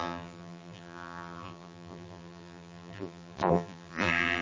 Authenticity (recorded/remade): remade